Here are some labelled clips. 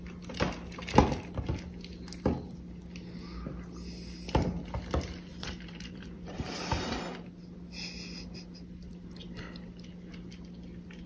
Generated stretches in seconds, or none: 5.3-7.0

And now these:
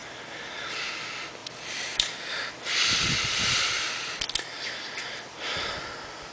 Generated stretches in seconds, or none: 1.4-2.5

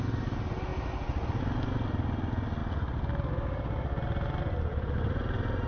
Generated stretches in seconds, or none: none

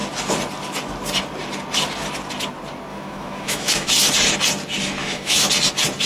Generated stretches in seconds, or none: 2.9-3.9; 5.0-5.5

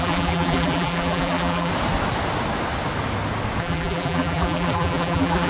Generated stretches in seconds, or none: 0.0-1.7; 3.6-5.5

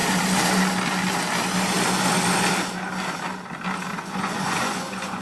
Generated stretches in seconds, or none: 3.9-5.2